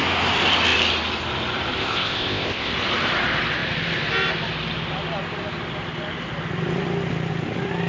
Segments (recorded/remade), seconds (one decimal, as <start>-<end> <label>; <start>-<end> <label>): 0.0-1.8 recorded; 1.8-2.7 remade; 2.7-7.9 recorded